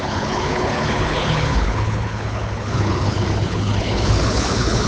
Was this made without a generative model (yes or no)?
no